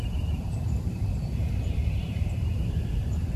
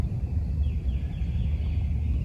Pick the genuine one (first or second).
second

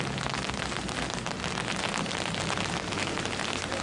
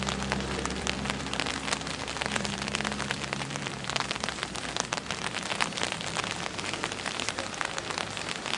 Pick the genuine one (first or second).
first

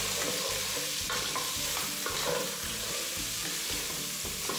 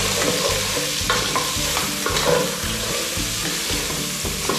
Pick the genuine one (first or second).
second